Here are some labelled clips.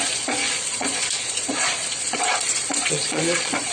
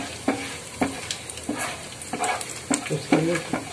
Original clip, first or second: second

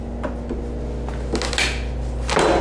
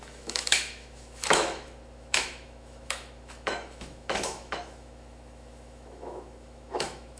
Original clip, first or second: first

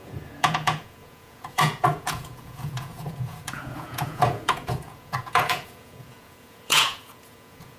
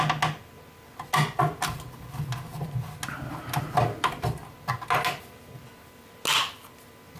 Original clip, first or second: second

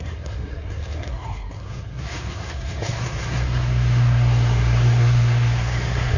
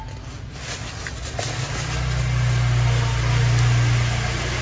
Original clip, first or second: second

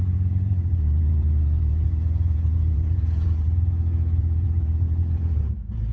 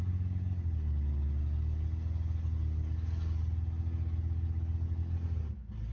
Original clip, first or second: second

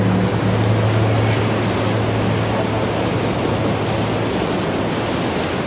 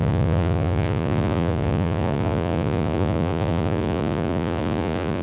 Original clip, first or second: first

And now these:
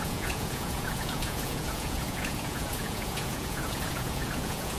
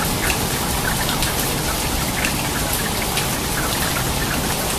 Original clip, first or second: second